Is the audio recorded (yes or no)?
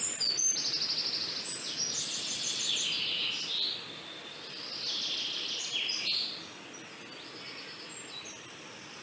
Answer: yes